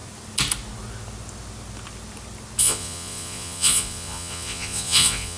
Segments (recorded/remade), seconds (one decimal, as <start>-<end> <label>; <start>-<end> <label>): 0.0-2.6 recorded; 2.6-5.4 remade